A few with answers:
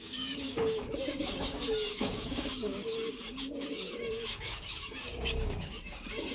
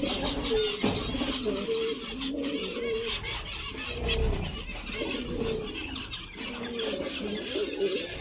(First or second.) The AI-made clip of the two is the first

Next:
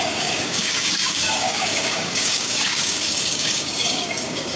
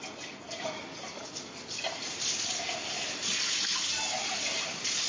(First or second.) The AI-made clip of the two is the first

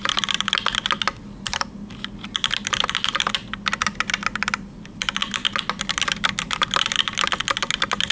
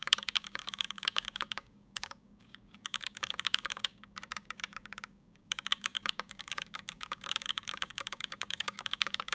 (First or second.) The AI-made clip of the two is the second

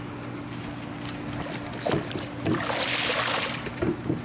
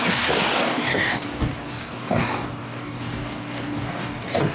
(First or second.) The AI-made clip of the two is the second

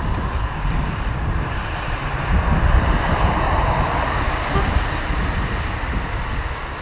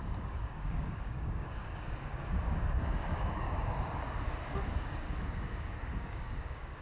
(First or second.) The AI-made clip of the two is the second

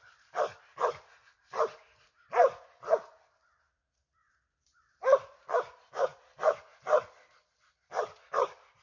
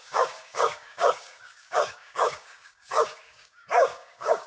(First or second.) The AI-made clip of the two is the second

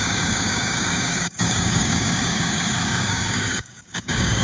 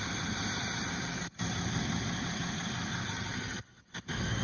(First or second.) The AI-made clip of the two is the first